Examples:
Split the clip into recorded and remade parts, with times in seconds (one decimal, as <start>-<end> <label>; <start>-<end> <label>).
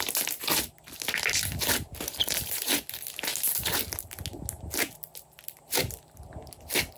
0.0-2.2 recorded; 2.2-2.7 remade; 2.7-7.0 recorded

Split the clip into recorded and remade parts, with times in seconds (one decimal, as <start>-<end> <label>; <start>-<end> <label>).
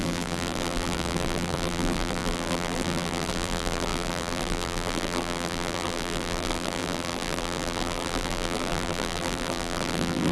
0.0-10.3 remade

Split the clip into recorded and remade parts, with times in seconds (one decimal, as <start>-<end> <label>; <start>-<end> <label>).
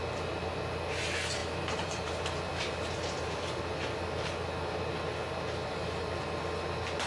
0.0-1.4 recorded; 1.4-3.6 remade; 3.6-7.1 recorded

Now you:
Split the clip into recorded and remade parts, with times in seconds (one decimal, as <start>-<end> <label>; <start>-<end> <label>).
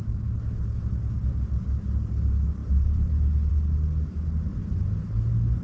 0.0-2.6 recorded; 2.6-3.5 remade; 3.5-4.5 recorded; 4.5-5.0 remade; 5.0-5.6 recorded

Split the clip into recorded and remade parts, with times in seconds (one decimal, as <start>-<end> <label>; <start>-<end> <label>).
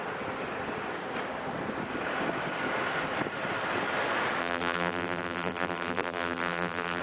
0.0-4.4 recorded; 4.4-7.0 remade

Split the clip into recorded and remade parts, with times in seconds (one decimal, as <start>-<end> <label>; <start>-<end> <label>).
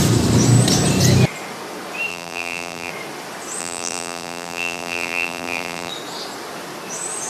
0.0-2.1 recorded; 2.1-2.9 remade; 2.9-3.6 recorded; 3.6-5.9 remade; 5.9-7.3 recorded